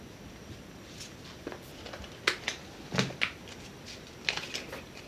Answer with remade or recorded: recorded